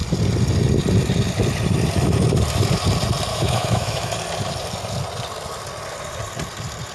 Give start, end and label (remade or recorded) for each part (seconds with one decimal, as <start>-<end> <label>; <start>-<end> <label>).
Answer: 0.0-3.3 recorded; 3.3-4.1 remade; 4.1-6.9 recorded